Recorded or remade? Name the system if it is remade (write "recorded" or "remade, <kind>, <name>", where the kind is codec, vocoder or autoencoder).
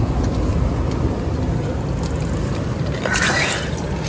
recorded